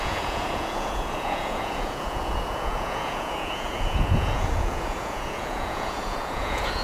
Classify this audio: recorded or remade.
remade